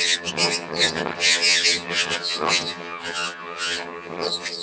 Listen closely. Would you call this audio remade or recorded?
remade